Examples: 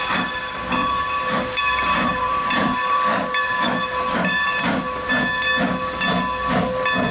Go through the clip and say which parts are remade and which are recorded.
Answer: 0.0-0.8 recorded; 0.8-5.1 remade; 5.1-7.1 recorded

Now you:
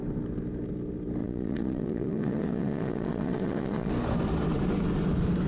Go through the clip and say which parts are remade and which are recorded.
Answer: 0.0-1.2 recorded; 1.2-3.9 remade; 3.9-5.5 recorded

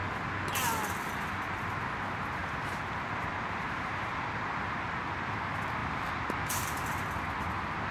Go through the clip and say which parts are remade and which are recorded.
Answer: 0.0-2.4 recorded; 2.4-4.5 remade; 4.5-5.8 recorded; 5.8-6.7 remade; 6.7-7.9 recorded

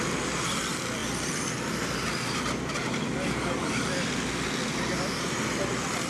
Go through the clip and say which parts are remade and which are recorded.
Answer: 0.0-6.1 recorded

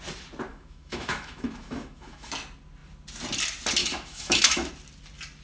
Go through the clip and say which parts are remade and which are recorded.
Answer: 0.0-0.5 recorded; 0.5-2.3 remade; 2.3-3.8 recorded; 3.8-4.7 remade; 4.7-5.4 recorded

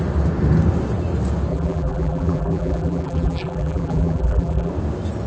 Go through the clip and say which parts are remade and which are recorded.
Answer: 0.0-1.5 recorded; 1.5-4.7 remade; 4.7-5.3 recorded

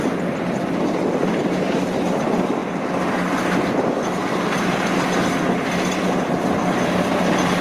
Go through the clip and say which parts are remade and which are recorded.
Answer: 0.0-7.6 recorded